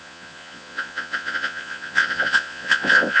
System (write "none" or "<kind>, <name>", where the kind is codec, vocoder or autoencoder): vocoder, Vocos